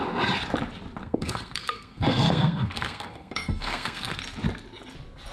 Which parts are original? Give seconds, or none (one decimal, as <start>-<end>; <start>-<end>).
0.0-1.0; 4.2-5.3